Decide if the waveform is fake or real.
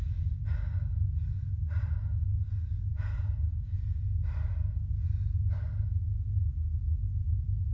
real